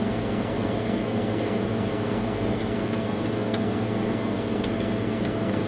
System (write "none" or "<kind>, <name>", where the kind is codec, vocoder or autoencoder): codec, SNAC